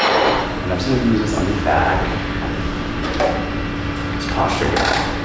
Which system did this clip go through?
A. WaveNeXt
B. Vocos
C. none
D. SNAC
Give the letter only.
C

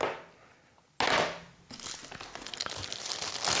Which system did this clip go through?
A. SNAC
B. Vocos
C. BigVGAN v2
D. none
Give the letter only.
D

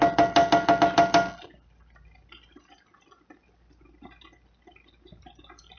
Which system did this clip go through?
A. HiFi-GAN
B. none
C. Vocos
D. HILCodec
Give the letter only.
B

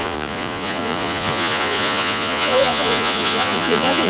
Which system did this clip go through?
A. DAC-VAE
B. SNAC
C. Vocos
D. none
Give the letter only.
C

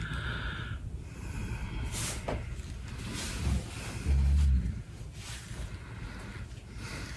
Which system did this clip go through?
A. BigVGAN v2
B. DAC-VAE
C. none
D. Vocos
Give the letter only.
C